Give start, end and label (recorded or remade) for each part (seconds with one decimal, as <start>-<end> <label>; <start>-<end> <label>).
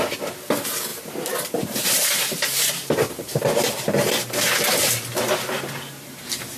0.0-0.9 recorded; 0.9-4.9 remade; 4.9-6.6 recorded